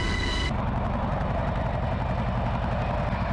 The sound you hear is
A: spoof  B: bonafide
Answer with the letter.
B